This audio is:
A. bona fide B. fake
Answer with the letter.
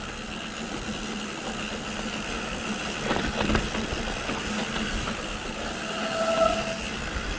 A